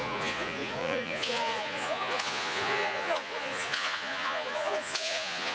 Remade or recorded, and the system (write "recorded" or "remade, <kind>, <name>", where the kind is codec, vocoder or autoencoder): remade, vocoder, Vocos